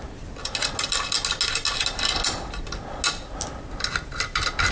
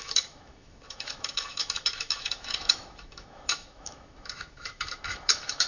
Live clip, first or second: first